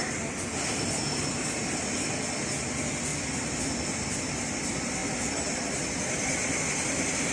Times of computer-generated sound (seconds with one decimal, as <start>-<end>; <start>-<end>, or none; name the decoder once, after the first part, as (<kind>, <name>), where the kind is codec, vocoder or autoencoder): none